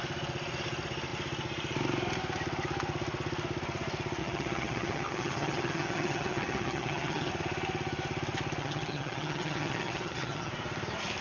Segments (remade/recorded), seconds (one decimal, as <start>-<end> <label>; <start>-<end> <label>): 0.0-4.2 recorded; 4.2-7.3 remade; 7.3-8.6 recorded; 8.6-10.5 remade; 10.5-11.2 recorded